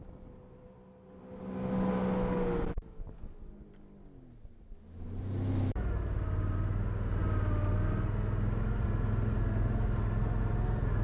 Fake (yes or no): no